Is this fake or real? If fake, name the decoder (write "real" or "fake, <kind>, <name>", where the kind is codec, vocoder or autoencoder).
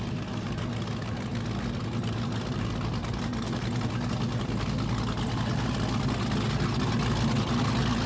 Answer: real